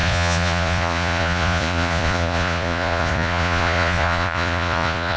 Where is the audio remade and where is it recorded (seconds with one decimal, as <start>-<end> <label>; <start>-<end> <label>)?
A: 0.0-5.2 remade